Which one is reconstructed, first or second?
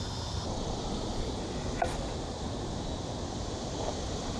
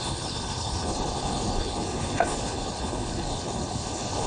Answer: second